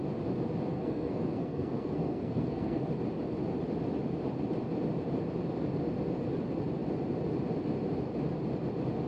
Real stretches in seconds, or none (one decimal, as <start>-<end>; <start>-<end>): 0.0-0.7; 2.9-9.1